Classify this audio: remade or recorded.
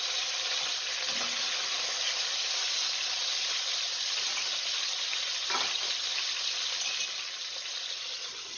recorded